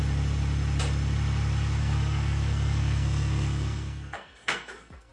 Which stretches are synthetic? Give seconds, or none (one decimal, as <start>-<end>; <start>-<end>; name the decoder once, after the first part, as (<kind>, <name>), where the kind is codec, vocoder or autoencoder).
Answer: 1.8-5.1 (codec, SNAC)